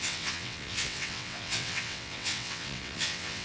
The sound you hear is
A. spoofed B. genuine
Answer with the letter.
A